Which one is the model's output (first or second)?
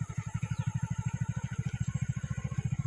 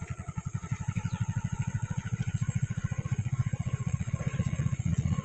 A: second